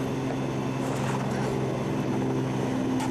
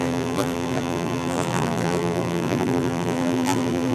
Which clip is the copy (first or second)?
second